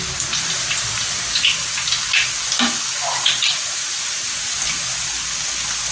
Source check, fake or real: real